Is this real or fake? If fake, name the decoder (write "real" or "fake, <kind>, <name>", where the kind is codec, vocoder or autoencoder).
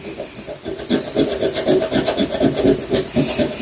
real